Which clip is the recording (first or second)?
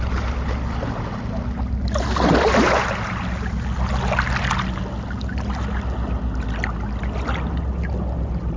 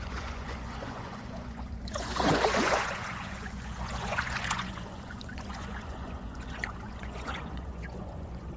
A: first